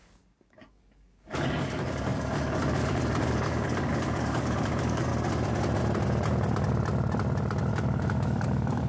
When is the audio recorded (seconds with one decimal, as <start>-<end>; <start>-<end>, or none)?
5.1-7.7